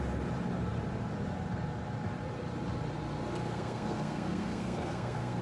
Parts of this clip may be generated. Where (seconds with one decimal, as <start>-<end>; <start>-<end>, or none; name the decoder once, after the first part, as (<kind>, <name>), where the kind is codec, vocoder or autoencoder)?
3.4-5.4 (codec, SNAC)